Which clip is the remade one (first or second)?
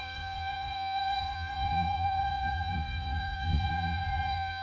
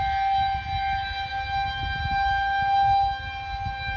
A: first